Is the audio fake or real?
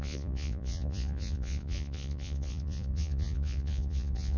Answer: fake